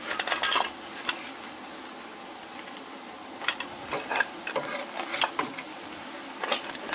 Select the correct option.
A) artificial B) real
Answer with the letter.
A